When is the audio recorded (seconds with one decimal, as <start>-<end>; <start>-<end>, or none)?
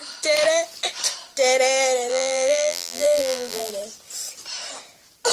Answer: 0.0-2.1; 3.7-5.3